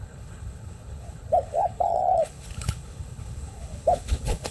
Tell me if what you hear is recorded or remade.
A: remade